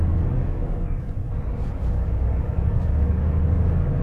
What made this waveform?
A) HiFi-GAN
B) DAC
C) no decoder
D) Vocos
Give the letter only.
B